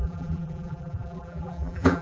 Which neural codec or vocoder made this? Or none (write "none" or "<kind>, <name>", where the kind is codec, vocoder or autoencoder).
vocoder, BigVGAN v2